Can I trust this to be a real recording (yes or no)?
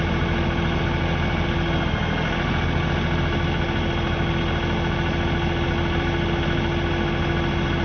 yes